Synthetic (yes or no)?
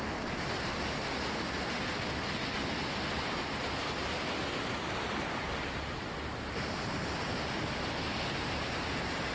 no